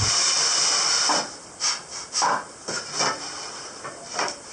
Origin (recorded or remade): recorded